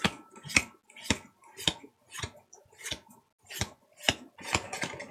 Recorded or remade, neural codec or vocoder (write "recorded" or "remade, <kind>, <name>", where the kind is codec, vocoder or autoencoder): recorded